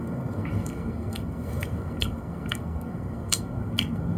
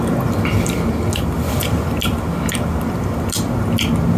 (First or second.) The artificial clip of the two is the first